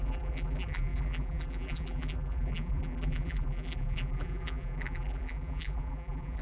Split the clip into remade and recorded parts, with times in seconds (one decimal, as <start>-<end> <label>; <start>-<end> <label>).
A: 0.0-6.4 remade